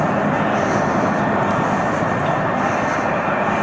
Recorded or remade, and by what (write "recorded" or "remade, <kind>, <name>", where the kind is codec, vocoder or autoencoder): recorded